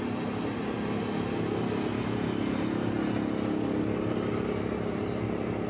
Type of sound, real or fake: real